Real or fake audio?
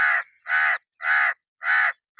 real